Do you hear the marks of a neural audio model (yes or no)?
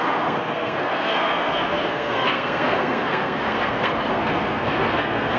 yes